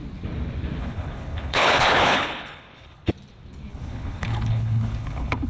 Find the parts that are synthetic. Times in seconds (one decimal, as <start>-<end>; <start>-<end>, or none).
0.8-3.1; 3.7-5.5